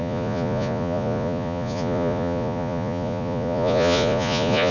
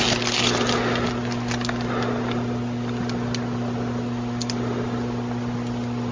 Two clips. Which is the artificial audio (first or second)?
first